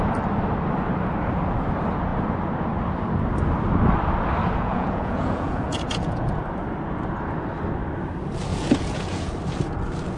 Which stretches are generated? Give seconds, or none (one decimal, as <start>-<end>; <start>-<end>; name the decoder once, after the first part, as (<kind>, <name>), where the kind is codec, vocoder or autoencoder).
4.4-6.3 (vocoder, Vocos); 8.5-9.3